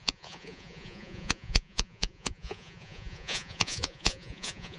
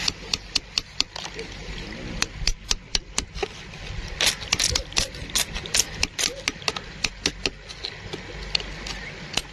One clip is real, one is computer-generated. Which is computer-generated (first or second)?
first